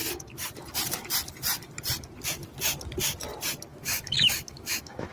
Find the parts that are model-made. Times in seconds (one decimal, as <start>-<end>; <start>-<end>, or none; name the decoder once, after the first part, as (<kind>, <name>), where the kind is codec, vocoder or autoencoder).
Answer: 3.7-5.1 (autoencoder, DAC-VAE)